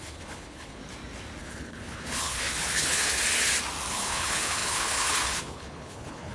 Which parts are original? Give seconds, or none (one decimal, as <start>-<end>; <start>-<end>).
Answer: 0.8-1.4; 3.2-3.9